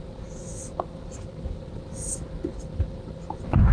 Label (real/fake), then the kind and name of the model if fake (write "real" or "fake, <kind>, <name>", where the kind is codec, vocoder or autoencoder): real